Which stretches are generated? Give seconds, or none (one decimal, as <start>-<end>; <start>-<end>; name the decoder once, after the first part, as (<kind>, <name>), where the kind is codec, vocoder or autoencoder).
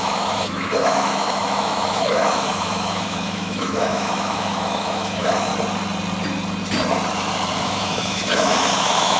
0.0-5.5 (autoencoder, DAC-VAE); 7.6-9.2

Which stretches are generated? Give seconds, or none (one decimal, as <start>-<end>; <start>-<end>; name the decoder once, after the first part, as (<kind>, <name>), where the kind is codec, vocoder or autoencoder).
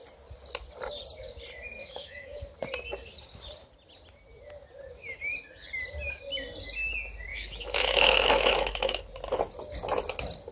1.8-2.4 (autoencoder, DAC-VAE); 7.3-9.0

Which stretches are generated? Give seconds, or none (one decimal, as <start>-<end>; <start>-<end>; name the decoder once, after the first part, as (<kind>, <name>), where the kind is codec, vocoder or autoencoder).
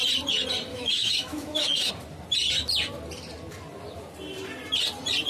0.7-1.9 (autoencoder, DAC-VAE)